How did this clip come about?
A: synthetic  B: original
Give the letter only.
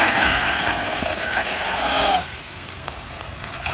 A